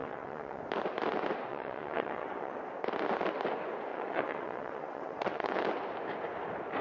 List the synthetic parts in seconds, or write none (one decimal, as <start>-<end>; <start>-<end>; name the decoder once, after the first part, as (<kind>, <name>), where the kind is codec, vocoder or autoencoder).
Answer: 0.0-0.6 (vocoder, WaveNeXt); 1.5-2.6; 3.9-5.6